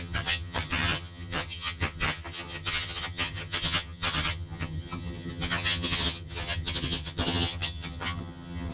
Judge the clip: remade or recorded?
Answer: remade